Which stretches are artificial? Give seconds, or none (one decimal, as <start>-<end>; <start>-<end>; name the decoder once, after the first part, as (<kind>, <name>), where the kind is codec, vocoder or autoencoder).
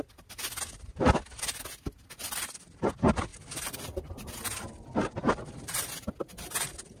none